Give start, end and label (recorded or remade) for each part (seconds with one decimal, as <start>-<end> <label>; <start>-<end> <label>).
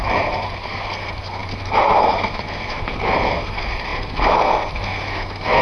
0.0-5.6 remade